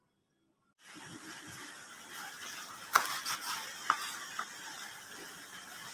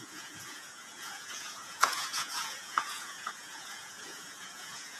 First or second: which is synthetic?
second